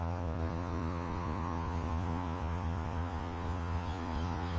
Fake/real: fake